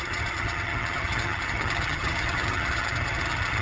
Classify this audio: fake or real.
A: fake